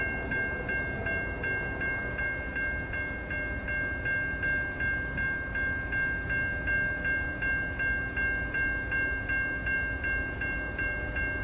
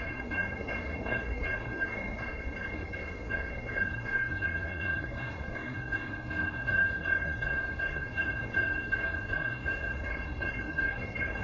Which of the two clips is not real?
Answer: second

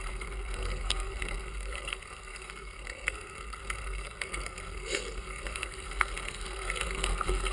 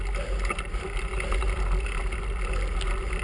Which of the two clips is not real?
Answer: first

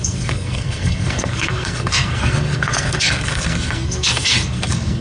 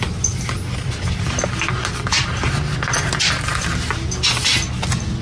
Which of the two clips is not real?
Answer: first